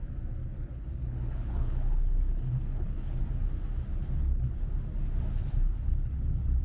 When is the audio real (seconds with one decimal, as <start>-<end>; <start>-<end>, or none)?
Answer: 0.0-0.4; 3.2-3.9; 4.5-5.9